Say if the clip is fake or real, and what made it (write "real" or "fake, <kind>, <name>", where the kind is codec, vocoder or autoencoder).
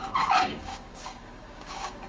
fake, codec, DAC